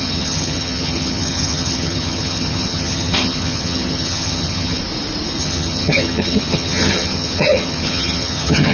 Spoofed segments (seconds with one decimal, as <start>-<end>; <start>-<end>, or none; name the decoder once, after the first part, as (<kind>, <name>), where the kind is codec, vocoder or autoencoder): 0.0-4.8 (vocoder, HiFi-GAN); 5.4-8.7